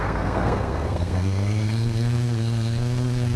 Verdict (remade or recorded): remade